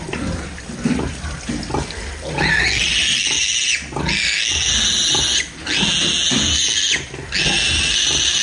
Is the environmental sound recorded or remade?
recorded